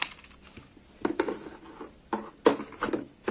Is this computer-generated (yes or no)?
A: no